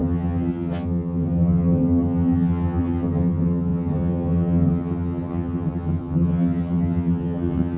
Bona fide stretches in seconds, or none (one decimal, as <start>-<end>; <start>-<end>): none